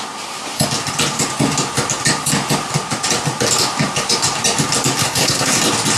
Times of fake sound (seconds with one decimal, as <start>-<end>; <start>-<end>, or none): 5.0-5.6